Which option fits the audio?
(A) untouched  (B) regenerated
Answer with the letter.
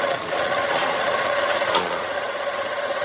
B